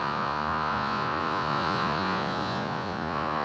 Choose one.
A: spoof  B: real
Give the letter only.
A